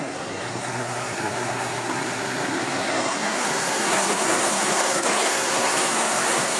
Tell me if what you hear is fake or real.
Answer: fake